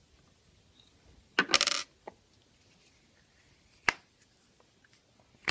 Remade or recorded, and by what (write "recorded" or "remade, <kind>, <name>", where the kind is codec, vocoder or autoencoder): recorded